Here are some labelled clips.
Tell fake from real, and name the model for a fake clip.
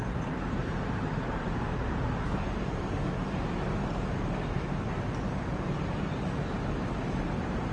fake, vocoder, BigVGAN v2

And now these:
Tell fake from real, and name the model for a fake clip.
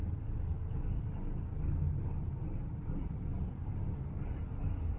real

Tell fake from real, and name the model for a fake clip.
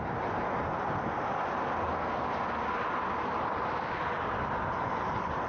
real